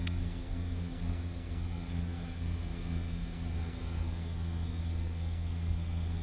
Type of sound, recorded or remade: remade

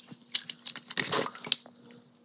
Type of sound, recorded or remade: recorded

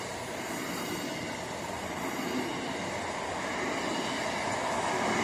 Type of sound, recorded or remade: recorded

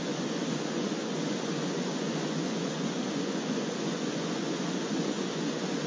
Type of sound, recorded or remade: remade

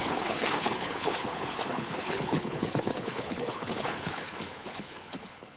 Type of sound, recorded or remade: remade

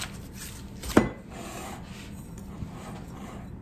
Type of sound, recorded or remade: recorded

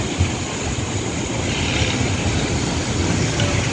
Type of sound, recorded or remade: recorded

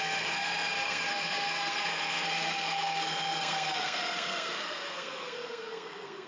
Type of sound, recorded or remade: remade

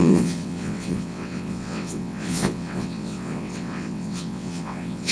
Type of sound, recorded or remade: remade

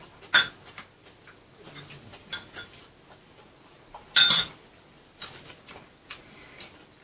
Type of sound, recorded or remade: recorded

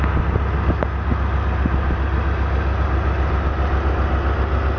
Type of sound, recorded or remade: recorded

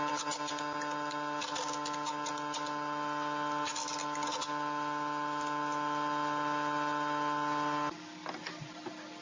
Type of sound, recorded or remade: recorded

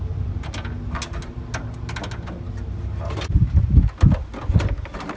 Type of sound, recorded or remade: recorded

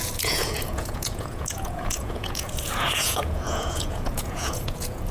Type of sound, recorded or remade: remade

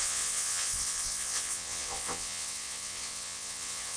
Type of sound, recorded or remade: remade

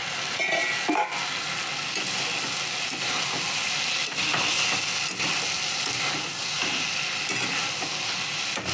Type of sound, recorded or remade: recorded